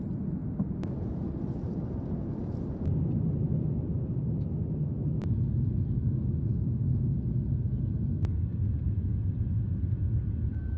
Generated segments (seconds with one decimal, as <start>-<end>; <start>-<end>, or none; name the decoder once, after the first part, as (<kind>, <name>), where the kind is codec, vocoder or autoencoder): 6.0-7.2 (codec, DAC)